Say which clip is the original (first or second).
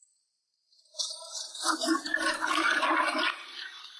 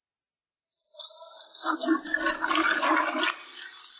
second